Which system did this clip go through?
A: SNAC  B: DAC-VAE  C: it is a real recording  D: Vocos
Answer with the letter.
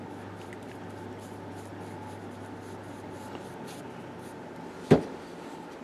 C